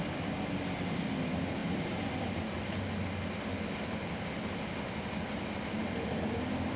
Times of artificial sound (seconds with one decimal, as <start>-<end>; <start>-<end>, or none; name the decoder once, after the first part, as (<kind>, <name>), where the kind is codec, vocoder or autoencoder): none